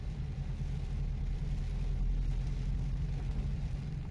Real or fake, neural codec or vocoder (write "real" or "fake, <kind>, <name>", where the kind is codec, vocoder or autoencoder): real